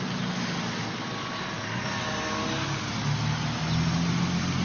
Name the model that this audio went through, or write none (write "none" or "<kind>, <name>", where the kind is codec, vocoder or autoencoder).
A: none